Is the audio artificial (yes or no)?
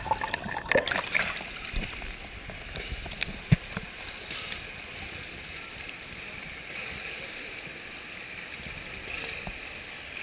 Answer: no